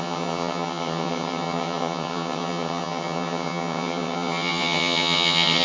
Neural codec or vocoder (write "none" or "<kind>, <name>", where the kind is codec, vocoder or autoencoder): vocoder, HiFi-GAN